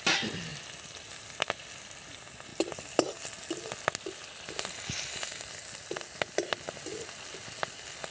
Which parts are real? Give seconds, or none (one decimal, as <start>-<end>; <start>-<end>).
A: 0.0-8.1